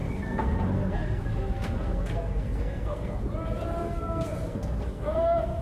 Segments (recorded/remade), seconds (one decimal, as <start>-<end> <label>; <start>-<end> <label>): 0.0-3.2 remade; 3.2-3.8 recorded; 3.8-5.6 remade